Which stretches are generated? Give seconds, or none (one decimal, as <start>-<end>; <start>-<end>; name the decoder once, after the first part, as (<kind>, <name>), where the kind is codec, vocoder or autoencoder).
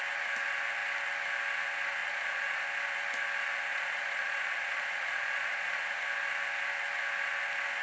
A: 2.0-2.6 (vocoder, Vocos); 3.7-6.0